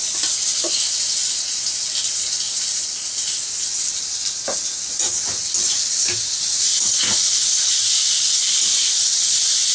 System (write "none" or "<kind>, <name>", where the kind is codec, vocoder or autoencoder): none